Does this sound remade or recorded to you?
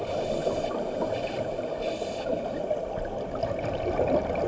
recorded